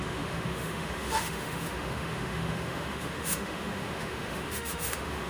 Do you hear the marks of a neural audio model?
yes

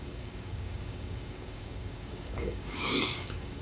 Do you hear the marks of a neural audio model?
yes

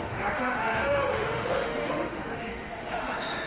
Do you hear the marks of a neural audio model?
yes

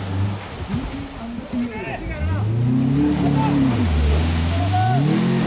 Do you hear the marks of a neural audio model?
no